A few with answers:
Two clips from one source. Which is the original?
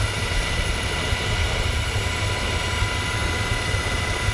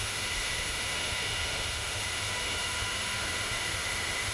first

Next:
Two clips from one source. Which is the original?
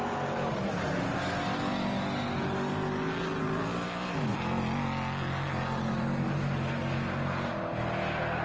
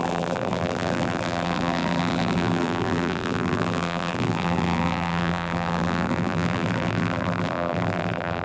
first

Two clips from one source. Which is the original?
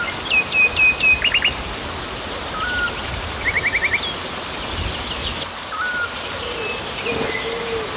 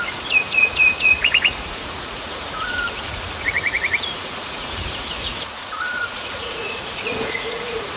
first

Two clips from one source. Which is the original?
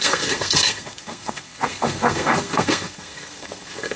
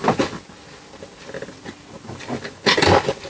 second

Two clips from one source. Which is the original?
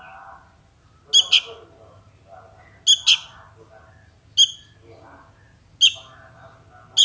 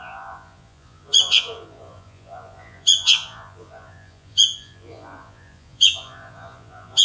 first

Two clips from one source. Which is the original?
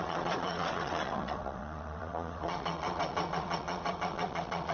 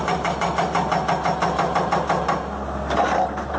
second